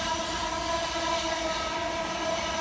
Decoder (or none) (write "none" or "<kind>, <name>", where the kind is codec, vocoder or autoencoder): none